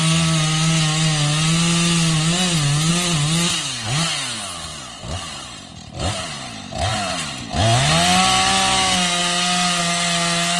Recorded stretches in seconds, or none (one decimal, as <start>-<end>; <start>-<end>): 0.0-4.7; 6.3-10.6